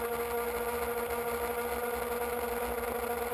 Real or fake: real